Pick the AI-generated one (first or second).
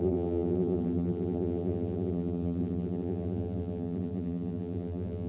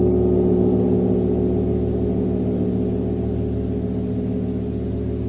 first